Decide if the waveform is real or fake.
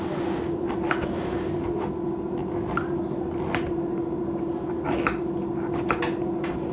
real